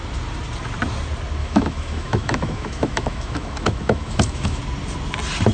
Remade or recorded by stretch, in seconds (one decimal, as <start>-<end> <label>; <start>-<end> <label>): 0.0-1.4 recorded; 1.4-4.6 remade; 4.6-5.5 recorded